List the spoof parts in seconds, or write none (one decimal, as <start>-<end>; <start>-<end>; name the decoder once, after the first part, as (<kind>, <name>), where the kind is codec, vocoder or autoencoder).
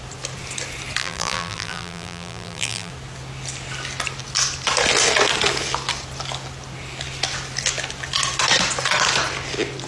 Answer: 1.0-2.9 (vocoder, BigVGAN v2)